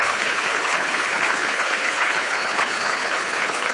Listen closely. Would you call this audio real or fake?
fake